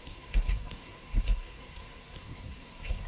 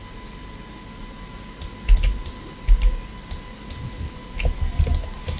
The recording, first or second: second